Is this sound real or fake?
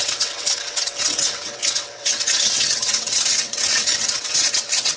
fake